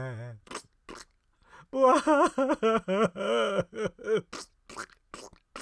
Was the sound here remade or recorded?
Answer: recorded